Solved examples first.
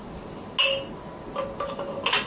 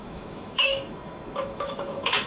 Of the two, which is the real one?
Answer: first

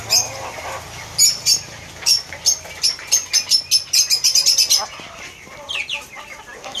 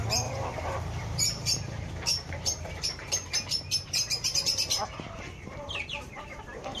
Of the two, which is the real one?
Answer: first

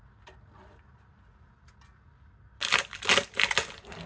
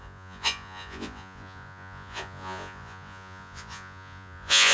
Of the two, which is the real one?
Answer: first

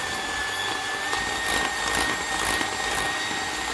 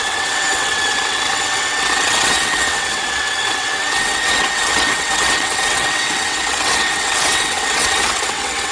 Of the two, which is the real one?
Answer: first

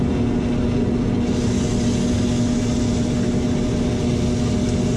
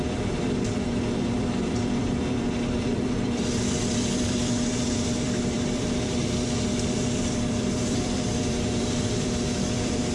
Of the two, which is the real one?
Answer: first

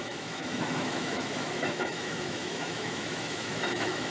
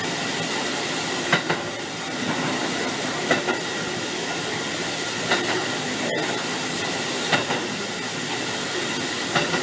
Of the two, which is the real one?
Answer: second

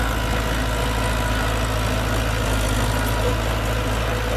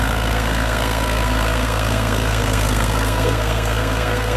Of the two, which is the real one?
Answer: first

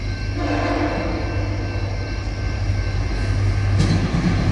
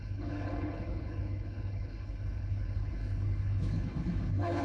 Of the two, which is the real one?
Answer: first